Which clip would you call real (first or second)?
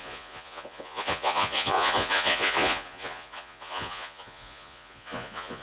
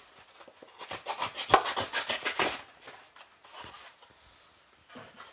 second